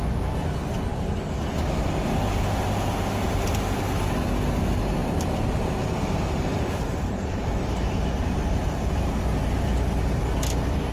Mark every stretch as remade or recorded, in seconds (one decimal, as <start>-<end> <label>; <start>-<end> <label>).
0.0-0.9 recorded; 0.9-1.4 remade; 1.4-5.0 recorded; 5.0-9.2 remade; 9.2-10.9 recorded